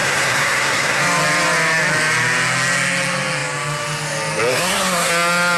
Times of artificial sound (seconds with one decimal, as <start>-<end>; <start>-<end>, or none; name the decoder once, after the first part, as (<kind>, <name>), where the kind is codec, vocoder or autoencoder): 0.0-1.0 (codec, SNAC); 4.5-5.1